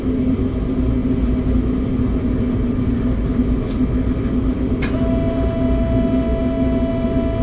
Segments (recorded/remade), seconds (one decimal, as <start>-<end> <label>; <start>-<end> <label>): 0.0-7.4 recorded